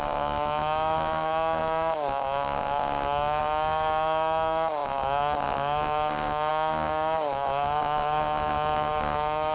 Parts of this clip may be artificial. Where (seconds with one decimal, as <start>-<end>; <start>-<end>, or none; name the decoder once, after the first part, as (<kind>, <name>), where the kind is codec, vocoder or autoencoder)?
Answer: 0.0-9.5 (codec, DAC)